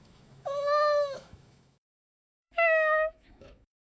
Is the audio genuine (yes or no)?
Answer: no